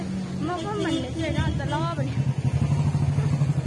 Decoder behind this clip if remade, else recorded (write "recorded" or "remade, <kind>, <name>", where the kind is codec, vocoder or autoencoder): recorded